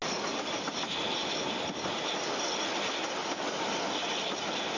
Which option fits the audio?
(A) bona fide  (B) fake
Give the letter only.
A